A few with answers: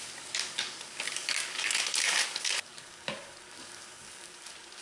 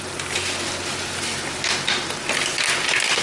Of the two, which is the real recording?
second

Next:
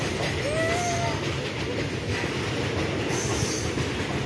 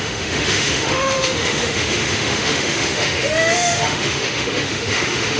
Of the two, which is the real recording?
first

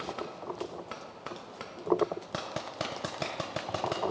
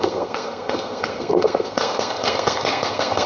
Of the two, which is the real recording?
first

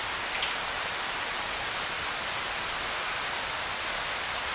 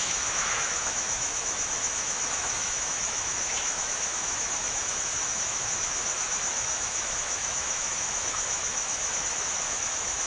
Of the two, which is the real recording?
first